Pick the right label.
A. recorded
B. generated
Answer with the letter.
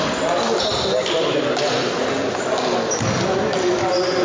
A